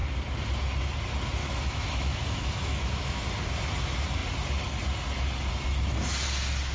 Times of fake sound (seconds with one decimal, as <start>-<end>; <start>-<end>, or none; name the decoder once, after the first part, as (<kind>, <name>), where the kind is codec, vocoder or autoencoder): 1.4-3.2 (autoencoder, DAC-VAE)